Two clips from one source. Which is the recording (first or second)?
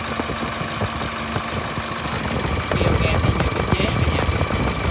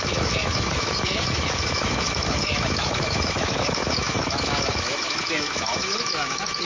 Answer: first